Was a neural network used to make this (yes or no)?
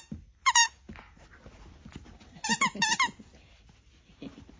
no